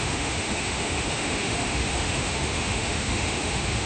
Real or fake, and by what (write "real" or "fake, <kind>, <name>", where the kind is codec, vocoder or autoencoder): fake, autoencoder, DAC-VAE